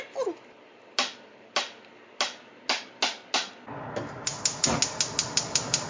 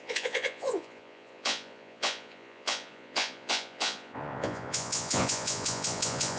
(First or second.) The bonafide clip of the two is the first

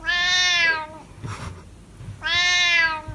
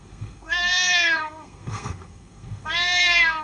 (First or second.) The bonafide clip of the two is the first